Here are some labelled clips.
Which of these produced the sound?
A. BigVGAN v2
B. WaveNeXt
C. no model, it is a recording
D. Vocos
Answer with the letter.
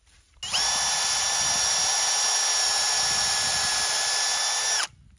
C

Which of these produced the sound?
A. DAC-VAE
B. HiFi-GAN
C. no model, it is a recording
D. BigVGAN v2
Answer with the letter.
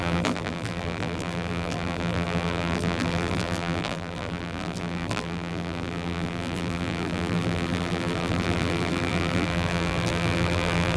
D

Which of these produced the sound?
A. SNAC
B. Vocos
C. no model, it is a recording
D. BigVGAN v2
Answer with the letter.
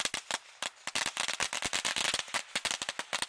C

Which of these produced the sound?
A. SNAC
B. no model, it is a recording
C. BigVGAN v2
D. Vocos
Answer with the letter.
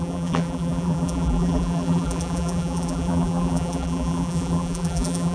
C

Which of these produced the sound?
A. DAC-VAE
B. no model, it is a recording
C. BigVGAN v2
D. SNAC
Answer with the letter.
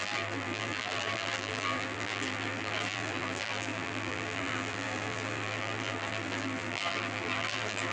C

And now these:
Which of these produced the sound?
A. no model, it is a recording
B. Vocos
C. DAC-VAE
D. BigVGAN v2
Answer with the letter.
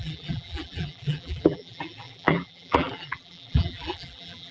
D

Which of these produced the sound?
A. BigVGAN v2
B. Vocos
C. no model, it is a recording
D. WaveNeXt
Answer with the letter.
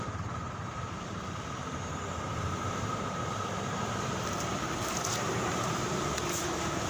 A